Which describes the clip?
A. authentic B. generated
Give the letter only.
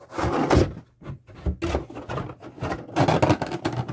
A